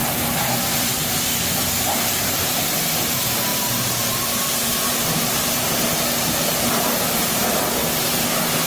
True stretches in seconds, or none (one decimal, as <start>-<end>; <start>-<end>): 5.6-6.4; 7.8-8.7